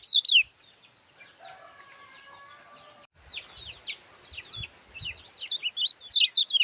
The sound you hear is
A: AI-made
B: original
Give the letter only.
B